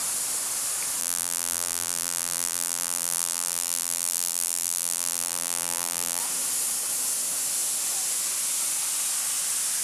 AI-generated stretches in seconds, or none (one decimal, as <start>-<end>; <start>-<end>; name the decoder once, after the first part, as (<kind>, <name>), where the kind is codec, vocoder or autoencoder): 1.0-6.2 (vocoder, BigVGAN v2)